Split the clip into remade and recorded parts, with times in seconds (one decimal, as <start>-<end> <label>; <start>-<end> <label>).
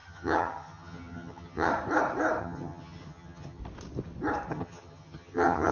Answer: 0.0-1.7 remade; 1.7-2.4 recorded; 2.4-3.6 remade; 3.6-4.5 recorded; 4.5-5.7 remade